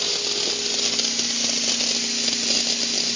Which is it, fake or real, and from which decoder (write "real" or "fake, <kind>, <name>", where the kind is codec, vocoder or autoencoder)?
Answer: real